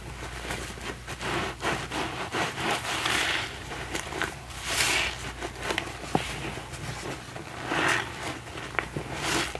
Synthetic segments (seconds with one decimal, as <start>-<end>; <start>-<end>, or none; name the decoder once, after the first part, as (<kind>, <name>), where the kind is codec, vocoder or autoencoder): 2.3-4.9 (vocoder, BigVGAN v2)

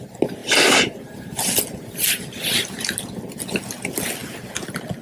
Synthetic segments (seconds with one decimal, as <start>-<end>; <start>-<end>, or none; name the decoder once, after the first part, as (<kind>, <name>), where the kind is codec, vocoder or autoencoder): none

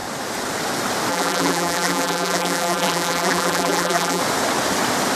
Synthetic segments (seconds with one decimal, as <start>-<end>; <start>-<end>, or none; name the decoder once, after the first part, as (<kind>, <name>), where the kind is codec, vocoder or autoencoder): 1.1-4.2 (vocoder, BigVGAN v2)

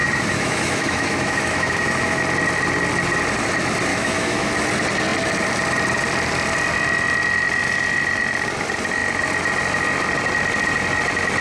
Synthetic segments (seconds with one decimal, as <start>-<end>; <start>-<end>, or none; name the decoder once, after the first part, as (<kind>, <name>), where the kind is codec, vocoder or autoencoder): 0.0-2.2 (autoencoder, DAC-VAE); 3.9-4.5

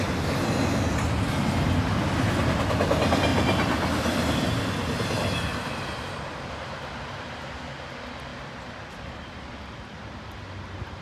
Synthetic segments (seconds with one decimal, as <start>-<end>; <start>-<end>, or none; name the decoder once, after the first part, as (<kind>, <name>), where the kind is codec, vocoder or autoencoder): none

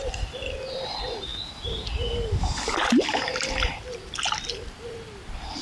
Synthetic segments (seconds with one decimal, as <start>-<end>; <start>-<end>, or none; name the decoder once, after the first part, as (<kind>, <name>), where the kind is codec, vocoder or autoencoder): none

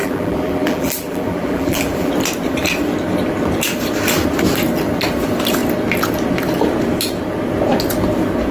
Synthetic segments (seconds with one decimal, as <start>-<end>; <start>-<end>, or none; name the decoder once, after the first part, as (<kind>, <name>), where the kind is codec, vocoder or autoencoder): 0.0-2.1 (vocoder, BigVGAN v2)